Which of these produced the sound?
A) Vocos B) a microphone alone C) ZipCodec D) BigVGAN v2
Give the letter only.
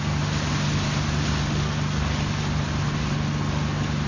B